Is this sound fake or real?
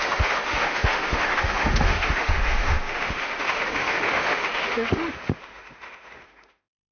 fake